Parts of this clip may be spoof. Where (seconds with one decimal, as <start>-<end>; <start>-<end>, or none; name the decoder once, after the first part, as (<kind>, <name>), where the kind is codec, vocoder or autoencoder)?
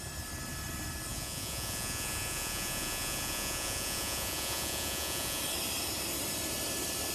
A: 1.1-5.4 (vocoder, Vocos)